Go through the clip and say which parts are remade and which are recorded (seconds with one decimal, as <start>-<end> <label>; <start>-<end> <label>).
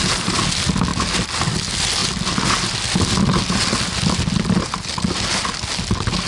0.0-6.3 recorded